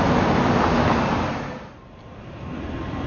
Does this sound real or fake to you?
real